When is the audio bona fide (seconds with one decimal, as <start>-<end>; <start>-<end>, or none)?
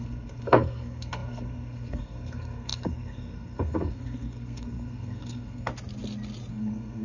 5.7-6.5